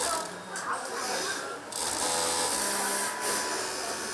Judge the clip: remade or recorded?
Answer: recorded